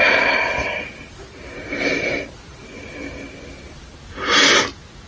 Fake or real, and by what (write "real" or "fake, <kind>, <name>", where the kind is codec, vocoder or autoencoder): real